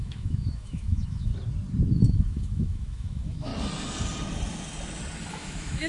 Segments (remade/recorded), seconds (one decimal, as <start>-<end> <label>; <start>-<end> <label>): 0.0-1.3 remade; 1.3-2.0 recorded; 2.0-3.5 remade; 3.5-5.3 recorded; 5.3-5.9 remade